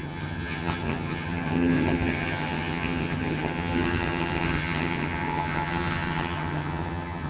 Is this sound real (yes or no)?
no